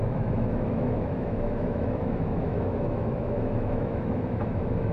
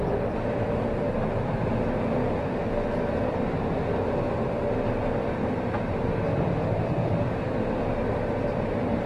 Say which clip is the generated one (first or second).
first